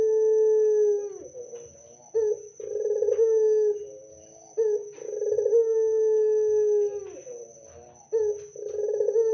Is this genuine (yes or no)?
yes